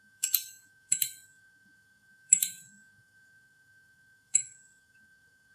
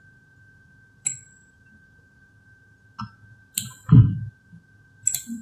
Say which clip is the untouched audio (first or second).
second